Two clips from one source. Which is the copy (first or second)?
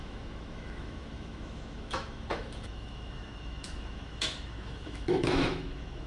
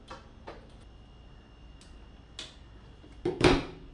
first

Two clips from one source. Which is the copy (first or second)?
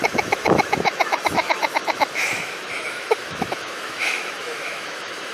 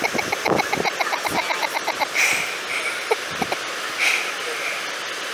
first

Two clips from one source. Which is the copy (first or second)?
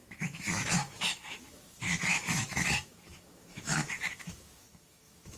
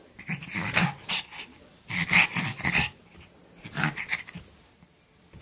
first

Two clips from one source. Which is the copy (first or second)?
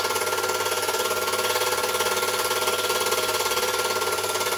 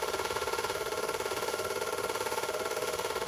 second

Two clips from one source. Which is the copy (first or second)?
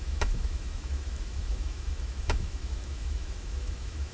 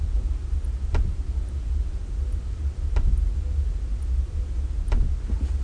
first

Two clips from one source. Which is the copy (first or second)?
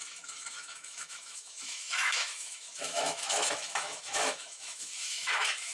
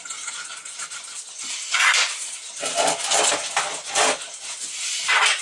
first